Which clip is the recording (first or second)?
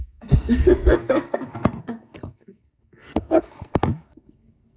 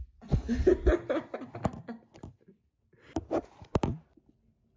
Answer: second